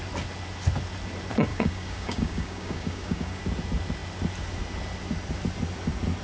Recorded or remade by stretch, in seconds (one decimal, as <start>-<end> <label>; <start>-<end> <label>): 0.0-1.5 recorded; 1.5-3.4 remade; 3.4-6.2 recorded